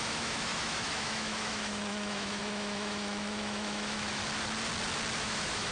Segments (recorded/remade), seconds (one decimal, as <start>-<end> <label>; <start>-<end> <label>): 0.0-4.2 remade; 4.2-5.2 recorded; 5.2-5.7 remade